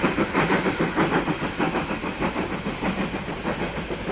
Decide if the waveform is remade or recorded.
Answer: recorded